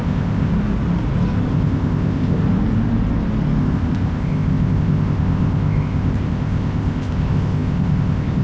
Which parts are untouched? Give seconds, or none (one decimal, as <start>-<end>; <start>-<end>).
0.5-1.5; 2.4-3.6